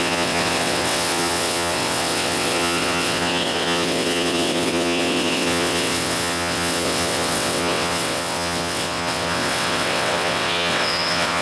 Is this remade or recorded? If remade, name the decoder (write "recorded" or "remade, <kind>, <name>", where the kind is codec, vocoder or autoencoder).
remade, vocoder, WaveNeXt